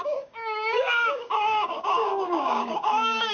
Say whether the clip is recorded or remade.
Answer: remade